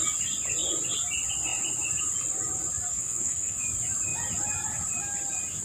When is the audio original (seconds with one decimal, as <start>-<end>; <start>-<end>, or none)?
0.0-2.9; 3.6-5.6